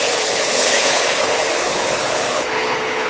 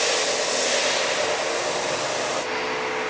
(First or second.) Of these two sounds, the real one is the second